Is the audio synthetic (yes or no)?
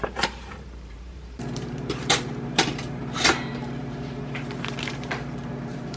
yes